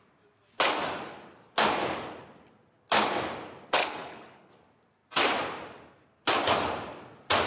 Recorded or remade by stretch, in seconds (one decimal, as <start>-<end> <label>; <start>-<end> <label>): 0.0-3.8 recorded; 3.8-4.5 remade; 4.5-7.5 recorded